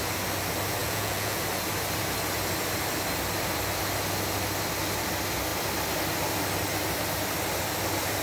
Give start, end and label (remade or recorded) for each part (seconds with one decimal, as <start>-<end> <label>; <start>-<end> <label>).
0.0-0.8 recorded; 0.8-1.4 remade; 1.4-8.2 recorded